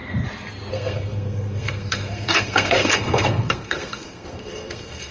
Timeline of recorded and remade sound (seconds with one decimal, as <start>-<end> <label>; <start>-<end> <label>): 0.0-0.7 recorded; 0.7-5.1 remade